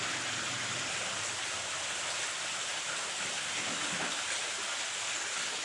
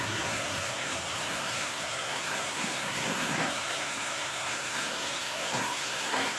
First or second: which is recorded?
first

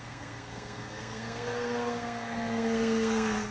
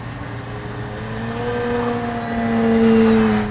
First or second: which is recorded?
second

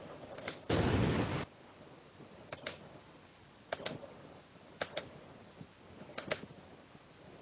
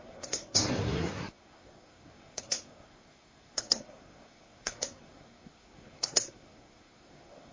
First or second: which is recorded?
first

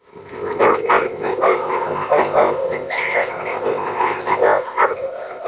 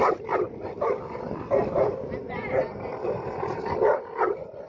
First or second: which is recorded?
second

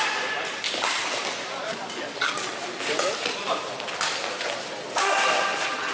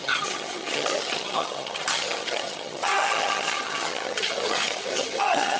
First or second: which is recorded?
first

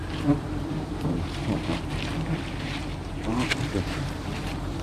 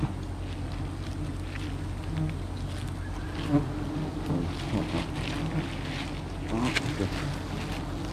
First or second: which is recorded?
second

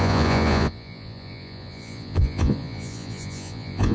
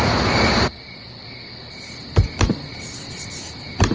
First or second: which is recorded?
second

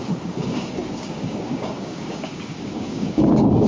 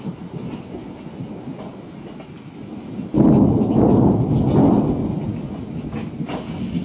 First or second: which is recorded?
second